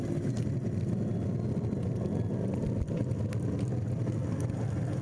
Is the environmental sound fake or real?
real